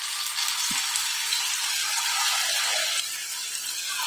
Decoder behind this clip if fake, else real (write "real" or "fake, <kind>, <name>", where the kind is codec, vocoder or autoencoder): real